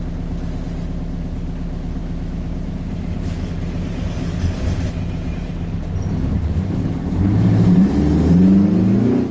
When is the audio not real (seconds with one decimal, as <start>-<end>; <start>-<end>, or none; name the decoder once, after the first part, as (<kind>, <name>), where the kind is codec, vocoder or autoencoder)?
6.3-8.0 (vocoder, BigVGAN v2)